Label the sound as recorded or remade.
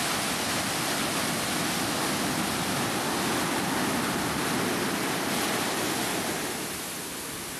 recorded